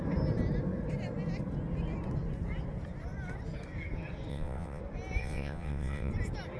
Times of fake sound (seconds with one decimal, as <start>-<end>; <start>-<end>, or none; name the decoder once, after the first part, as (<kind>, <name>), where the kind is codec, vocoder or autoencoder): 4.3-4.8 (vocoder, WaveNeXt); 5.2-6.1